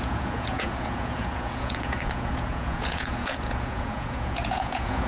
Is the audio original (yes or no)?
no